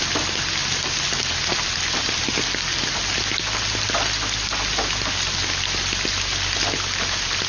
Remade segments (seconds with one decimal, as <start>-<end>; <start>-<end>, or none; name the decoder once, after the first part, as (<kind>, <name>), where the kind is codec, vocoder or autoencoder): none